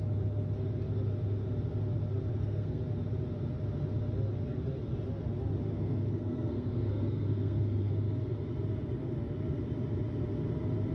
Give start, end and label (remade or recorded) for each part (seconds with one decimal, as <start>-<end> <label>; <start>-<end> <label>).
0.0-2.3 recorded; 2.3-2.8 remade; 2.8-5.7 recorded; 5.7-7.9 remade; 7.9-10.9 recorded